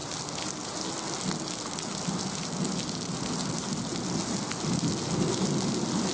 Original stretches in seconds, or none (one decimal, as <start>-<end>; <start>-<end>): 0.0-6.1